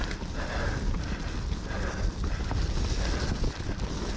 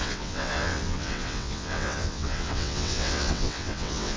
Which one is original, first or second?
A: first